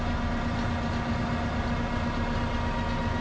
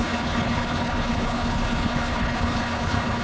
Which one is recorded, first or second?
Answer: first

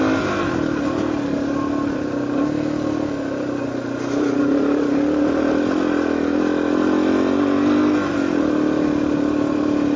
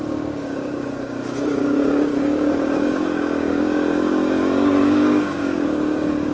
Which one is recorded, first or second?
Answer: first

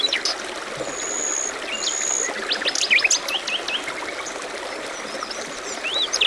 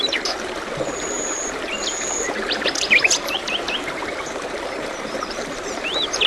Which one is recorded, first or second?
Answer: first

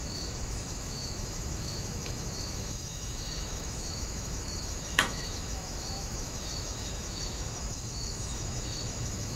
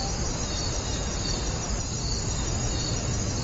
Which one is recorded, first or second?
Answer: second